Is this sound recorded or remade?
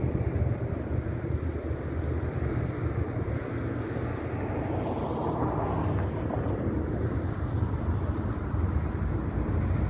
recorded